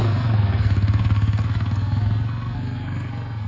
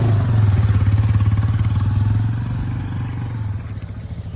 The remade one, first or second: first